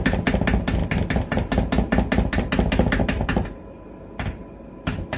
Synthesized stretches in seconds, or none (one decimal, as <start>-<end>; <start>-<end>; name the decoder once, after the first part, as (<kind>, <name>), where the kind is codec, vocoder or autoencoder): none